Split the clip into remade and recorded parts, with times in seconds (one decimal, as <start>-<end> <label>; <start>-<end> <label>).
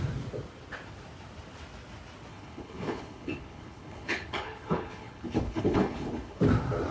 0.0-2.3 recorded; 2.3-6.4 remade; 6.4-6.9 recorded